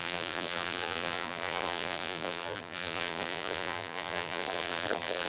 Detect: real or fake fake